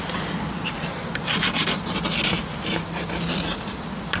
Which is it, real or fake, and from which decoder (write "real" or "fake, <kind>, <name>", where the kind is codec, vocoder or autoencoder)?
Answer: real